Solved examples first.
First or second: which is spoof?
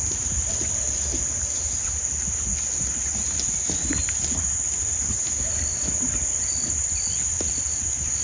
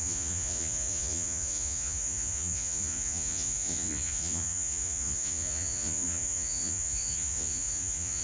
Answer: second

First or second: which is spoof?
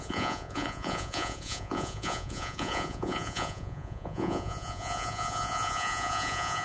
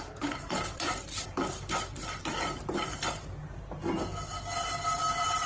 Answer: first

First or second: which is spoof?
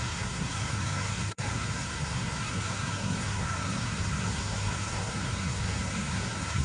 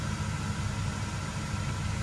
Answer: first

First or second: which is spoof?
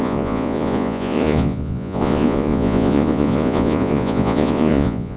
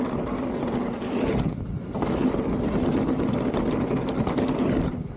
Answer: first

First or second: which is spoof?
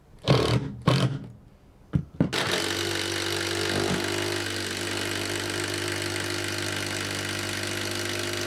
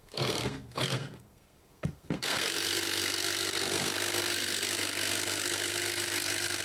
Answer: second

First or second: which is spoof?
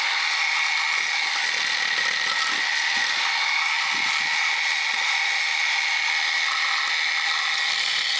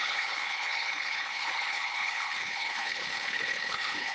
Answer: second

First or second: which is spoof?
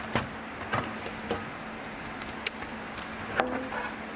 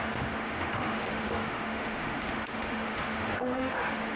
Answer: second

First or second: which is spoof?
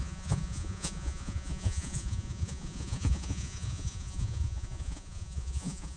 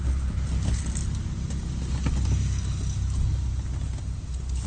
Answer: first